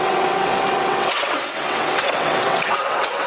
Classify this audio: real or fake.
fake